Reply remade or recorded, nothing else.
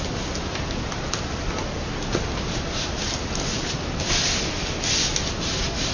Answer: recorded